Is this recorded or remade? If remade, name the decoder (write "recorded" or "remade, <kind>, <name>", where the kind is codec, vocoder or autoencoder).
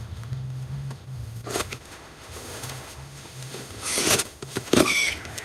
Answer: remade, autoencoder, DAC-VAE